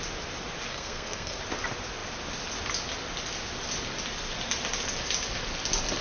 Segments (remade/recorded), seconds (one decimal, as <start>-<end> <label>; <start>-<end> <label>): 0.0-0.7 recorded; 0.7-1.4 remade; 1.4-6.0 recorded